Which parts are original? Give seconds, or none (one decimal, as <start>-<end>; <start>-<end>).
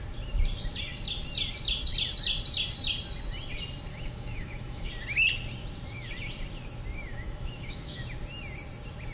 0.0-3.9; 4.9-7.1; 8.0-9.1